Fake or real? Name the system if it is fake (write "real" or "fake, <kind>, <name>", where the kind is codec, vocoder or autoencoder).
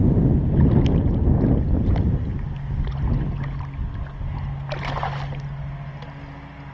real